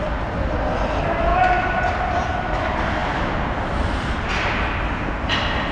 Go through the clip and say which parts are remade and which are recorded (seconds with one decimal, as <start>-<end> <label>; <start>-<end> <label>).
0.0-5.7 recorded